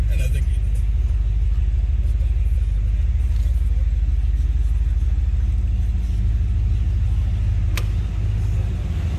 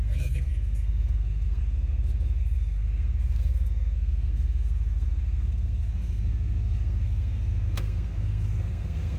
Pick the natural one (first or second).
first